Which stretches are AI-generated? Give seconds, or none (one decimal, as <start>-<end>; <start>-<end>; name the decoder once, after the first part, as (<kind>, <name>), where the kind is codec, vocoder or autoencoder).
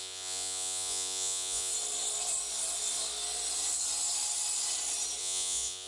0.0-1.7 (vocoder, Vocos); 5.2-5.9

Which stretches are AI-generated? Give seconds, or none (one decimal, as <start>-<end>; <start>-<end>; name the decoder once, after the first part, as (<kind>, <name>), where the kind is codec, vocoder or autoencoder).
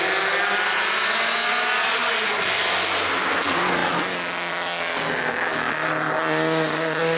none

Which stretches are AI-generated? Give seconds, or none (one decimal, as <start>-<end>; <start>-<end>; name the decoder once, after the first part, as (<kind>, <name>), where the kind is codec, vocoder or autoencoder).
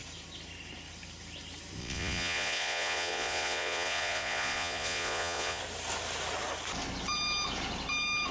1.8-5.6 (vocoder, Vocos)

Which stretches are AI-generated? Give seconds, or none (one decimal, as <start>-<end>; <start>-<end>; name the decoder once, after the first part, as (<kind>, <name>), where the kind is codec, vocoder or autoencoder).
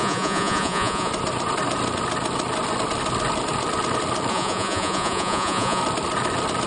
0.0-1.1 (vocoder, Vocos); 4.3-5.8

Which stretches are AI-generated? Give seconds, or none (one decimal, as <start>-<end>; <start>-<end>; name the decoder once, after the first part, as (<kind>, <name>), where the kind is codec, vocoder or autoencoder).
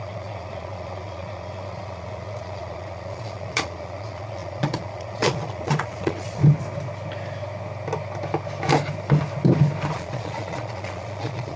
0.0-6.4 (vocoder, Vocos); 9.9-11.6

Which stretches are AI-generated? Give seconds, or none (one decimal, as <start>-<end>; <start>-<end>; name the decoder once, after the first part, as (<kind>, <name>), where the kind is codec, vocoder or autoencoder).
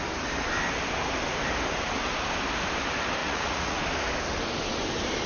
3.2-3.8 (vocoder, Vocos)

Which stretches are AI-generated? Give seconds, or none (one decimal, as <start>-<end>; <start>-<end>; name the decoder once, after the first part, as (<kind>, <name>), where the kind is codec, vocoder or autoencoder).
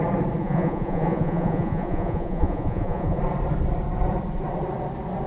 0.4-3.2 (vocoder, Vocos)